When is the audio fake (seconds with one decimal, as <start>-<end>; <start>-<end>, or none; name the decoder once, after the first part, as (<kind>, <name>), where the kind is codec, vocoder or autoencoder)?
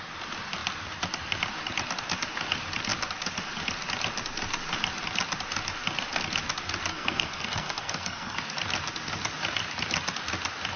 6.9-8.4 (codec, SNAC)